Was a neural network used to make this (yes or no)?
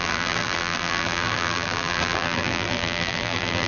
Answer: yes